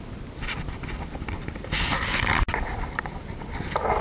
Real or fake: real